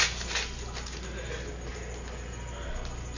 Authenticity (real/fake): real